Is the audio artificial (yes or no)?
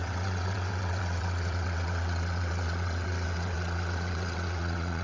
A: yes